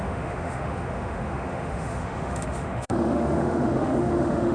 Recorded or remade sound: remade